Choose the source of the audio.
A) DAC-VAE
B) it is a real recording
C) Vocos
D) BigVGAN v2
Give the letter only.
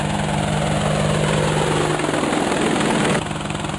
B